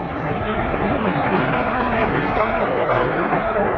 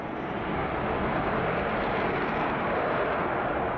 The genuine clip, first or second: second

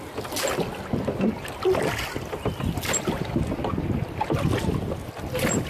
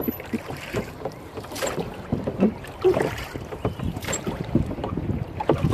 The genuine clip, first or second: first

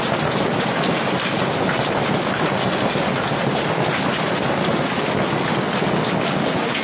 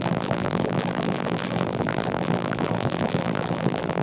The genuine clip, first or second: first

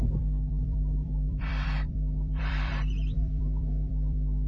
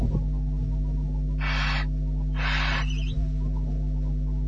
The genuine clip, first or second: second